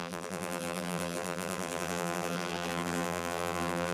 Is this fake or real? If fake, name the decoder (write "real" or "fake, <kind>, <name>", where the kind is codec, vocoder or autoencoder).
fake, vocoder, BigVGAN v2